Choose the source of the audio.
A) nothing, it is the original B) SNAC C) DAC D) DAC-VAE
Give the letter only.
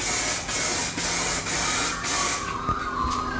A